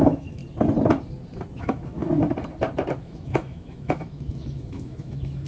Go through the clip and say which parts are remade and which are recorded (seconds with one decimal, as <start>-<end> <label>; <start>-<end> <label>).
0.0-0.4 remade; 0.4-1.6 recorded; 1.6-2.0 remade; 2.0-3.0 recorded; 3.0-5.5 remade